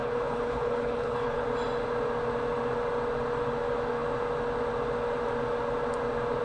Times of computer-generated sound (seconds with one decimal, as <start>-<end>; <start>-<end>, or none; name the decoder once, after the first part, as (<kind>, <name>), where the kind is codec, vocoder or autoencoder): 0.0-1.4 (codec, HILCodec)